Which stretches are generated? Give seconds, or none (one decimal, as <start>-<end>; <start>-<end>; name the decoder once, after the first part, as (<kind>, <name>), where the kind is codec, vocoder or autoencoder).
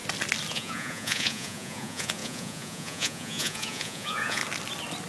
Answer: 0.5-4.4 (vocoder, Vocos)